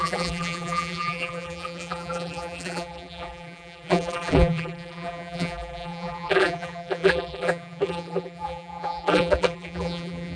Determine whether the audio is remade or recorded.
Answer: remade